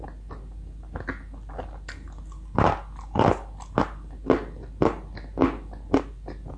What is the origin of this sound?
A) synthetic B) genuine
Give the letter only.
B